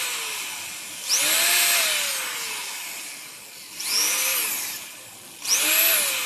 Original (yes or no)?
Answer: yes